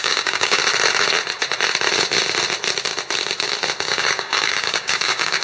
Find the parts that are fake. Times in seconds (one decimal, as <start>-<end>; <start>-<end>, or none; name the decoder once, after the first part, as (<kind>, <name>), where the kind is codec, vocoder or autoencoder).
0.0-0.6 (codec, DAC); 3.8-5.4